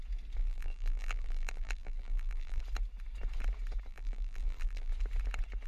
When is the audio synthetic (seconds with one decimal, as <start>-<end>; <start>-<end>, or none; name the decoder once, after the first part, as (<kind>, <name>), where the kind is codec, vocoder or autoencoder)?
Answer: 0.4-2.6 (vocoder, BigVGAN v2); 3.9-4.9